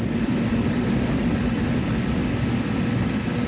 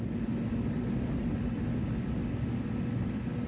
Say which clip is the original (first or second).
second